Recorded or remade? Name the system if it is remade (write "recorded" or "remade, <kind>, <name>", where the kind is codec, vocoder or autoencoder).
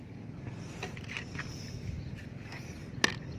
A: recorded